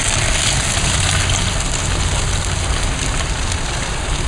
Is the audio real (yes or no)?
yes